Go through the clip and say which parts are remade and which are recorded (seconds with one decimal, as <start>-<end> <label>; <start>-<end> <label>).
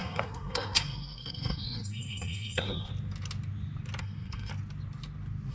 0.0-2.9 remade; 2.9-4.0 recorded; 4.0-4.5 remade; 4.5-5.5 recorded